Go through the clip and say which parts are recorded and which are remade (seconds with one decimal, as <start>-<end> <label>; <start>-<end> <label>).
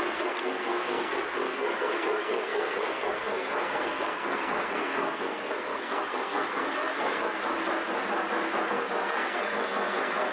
0.0-7.4 remade; 7.4-8.7 recorded; 8.7-10.3 remade